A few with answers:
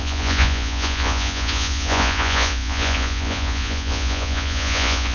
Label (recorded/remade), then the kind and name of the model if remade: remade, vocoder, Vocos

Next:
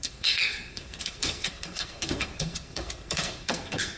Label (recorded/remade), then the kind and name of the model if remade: remade, codec, SNAC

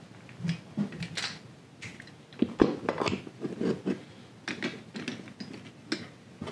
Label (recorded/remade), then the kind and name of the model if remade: recorded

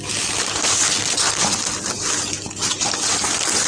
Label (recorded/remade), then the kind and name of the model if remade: recorded